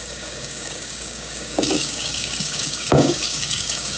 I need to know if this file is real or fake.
fake